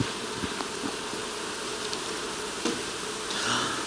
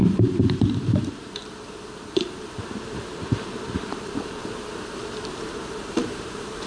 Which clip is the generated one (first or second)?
second